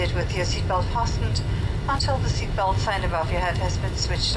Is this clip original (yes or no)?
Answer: yes